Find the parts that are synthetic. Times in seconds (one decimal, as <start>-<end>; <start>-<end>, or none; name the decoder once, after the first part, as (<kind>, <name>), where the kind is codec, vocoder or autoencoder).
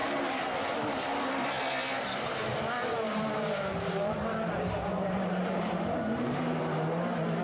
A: 2.4-6.6 (vocoder, BigVGAN v2)